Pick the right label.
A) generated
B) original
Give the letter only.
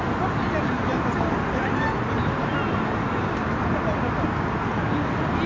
B